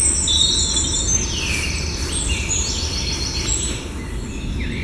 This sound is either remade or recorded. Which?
recorded